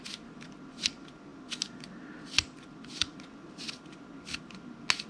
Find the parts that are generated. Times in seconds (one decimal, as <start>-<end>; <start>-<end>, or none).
none